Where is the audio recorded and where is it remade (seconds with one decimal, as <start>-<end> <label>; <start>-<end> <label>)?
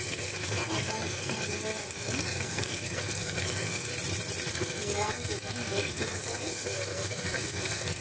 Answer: 0.0-3.9 remade; 3.9-4.5 recorded; 4.5-8.0 remade